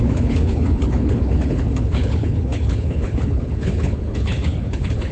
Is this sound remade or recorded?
remade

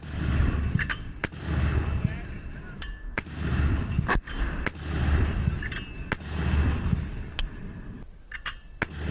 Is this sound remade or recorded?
recorded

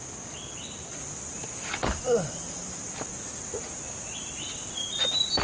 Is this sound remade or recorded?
recorded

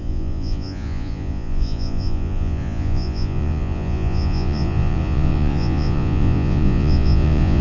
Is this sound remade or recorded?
remade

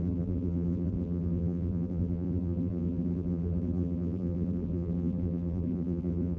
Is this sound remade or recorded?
remade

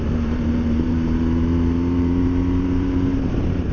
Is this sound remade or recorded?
remade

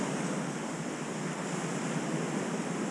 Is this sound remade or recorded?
recorded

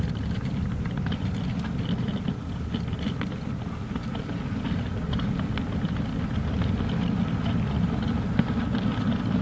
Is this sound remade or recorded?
recorded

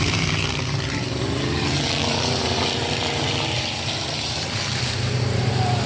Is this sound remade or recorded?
remade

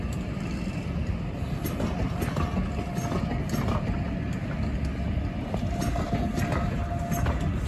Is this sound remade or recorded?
recorded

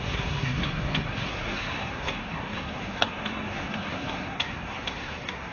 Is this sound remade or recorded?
remade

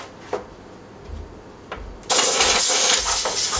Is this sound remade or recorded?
recorded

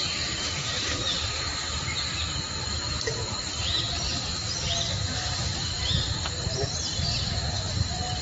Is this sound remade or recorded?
recorded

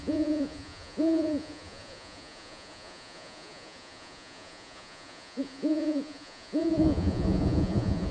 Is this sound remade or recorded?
remade